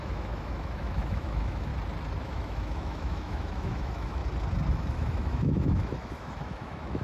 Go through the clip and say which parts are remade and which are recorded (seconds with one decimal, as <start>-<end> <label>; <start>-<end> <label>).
0.0-1.7 remade; 1.7-2.2 recorded; 2.2-4.2 remade; 4.2-4.7 recorded; 4.7-7.0 remade